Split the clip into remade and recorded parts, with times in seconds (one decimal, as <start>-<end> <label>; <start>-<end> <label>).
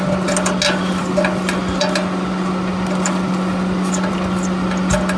0.0-5.2 recorded